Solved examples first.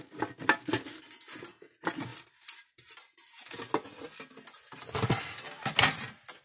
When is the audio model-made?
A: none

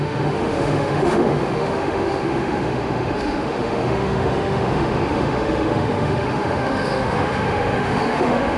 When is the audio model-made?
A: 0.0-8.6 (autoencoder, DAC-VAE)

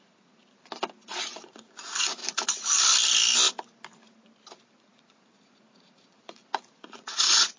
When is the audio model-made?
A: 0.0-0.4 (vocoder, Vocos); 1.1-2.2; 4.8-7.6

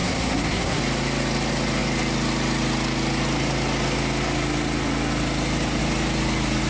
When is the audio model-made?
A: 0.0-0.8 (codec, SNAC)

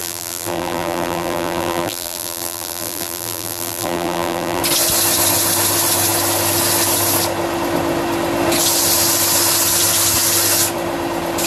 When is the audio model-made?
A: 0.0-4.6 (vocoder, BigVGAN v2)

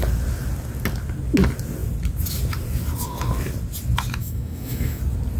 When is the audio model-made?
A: 4.2-5.0 (autoencoder, DAC-VAE)